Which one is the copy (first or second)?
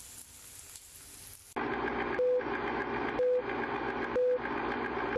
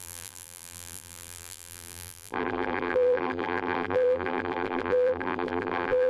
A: second